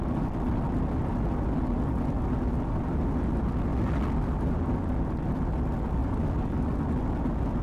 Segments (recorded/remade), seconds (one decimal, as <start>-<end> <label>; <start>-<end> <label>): 0.0-3.7 recorded; 3.7-5.1 remade; 5.1-6.0 recorded; 6.0-6.6 remade; 6.6-7.6 recorded